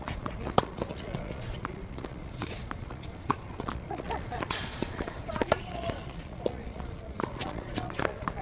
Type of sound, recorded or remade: remade